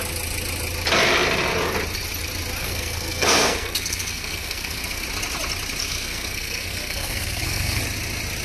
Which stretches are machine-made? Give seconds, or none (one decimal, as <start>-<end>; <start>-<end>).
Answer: 2.6-5.0; 5.8-7.8